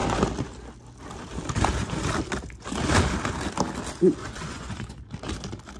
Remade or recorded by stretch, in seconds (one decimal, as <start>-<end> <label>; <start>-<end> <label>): 0.0-4.2 recorded; 4.2-5.0 remade; 5.0-5.8 recorded

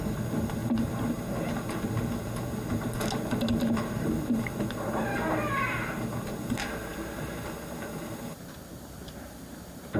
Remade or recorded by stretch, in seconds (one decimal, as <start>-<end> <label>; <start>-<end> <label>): 0.0-10.0 recorded

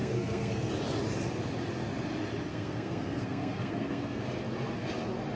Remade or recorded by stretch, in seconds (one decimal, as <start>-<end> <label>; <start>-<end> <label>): 0.0-0.7 remade; 0.7-2.5 recorded; 2.5-4.2 remade; 4.2-5.4 recorded

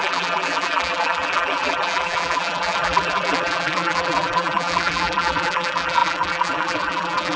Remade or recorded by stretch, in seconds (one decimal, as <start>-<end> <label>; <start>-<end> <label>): 0.0-7.4 remade

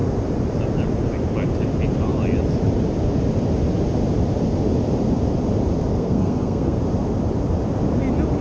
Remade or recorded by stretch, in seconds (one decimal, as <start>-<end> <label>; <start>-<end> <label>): 0.0-5.9 recorded; 5.9-6.8 remade; 6.8-8.4 recorded